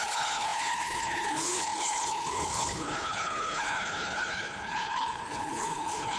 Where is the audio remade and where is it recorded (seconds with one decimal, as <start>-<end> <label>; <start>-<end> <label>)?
0.0-6.2 remade